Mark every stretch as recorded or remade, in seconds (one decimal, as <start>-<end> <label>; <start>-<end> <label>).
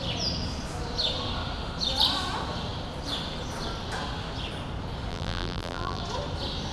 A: 0.0-5.1 recorded; 5.1-6.0 remade; 6.0-6.7 recorded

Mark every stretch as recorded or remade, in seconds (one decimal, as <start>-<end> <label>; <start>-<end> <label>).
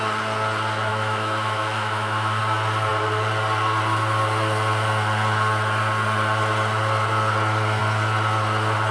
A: 0.0-0.9 recorded; 0.9-2.4 remade; 2.4-8.9 recorded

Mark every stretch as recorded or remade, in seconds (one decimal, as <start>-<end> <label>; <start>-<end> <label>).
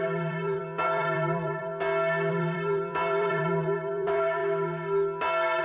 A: 0.0-1.7 remade; 1.7-2.3 recorded; 2.3-4.4 remade; 4.4-5.6 recorded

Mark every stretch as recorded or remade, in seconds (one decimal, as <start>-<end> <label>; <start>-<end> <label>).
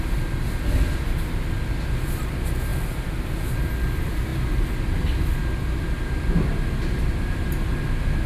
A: 0.0-8.3 recorded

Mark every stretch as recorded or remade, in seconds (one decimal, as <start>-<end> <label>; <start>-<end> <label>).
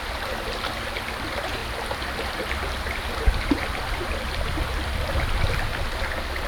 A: 0.0-1.6 recorded; 1.6-5.5 remade; 5.5-6.5 recorded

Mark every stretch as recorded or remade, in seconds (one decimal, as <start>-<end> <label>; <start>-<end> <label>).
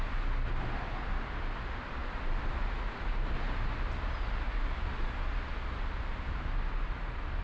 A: 0.0-7.4 recorded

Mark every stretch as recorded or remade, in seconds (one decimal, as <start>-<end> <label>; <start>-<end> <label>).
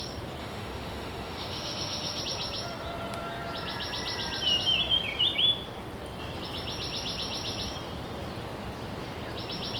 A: 0.0-0.4 recorded; 0.4-2.2 remade; 2.2-9.8 recorded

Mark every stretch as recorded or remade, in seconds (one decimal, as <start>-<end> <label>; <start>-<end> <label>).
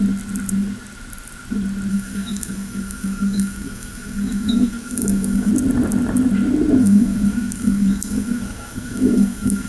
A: 0.0-1.9 recorded; 1.9-5.5 remade; 5.5-6.8 recorded; 6.8-9.7 remade